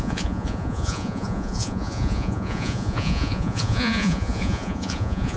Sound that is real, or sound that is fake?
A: fake